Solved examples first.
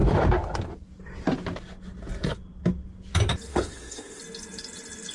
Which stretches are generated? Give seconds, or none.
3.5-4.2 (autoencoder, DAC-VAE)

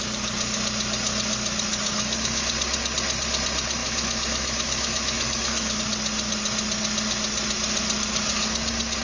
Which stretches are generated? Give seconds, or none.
1.7-2.5 (autoencoder, DAC-VAE); 3.8-5.8

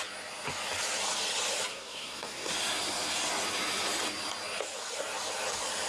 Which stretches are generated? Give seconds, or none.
1.7-2.5 (codec, SNAC)

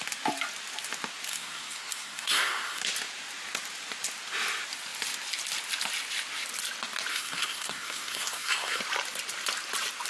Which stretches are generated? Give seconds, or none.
1.3-2.8 (codec, SNAC); 7.1-8.8

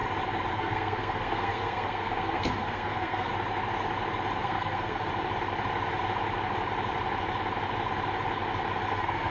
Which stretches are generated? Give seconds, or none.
0.5-3.3 (codec, SNAC); 4.4-5.1; 8.9-9.3